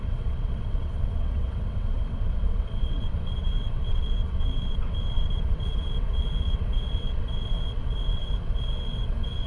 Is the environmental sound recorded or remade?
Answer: remade